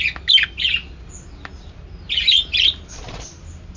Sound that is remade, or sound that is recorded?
recorded